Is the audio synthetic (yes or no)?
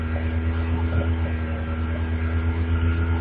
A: no